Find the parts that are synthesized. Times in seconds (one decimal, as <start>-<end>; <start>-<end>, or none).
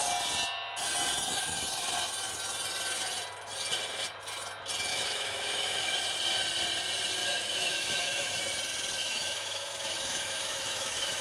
4.9-6.0; 7.2-8.4; 9.0-11.2